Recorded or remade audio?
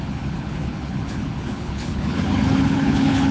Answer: remade